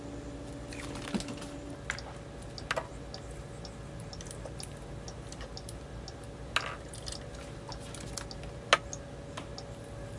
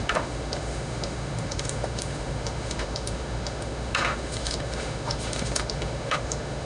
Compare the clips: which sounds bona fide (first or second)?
first